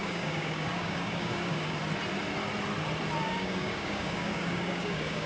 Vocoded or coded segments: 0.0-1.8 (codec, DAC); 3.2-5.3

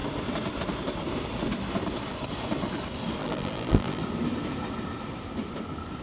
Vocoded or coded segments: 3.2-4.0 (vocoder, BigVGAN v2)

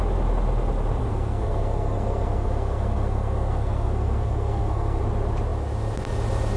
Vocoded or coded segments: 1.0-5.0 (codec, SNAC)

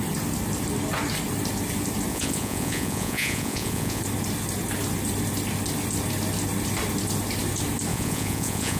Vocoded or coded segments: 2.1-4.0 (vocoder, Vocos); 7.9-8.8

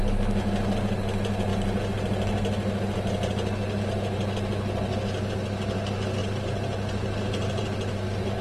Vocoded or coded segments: 6.2-8.4 (vocoder, BigVGAN v2)

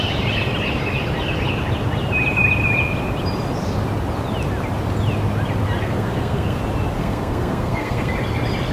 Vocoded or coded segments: 5.8-6.6 (codec, SNAC); 7.0-8.1

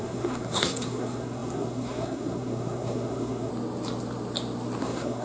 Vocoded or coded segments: 0.0-3.5 (codec, SNAC); 4.8-5.2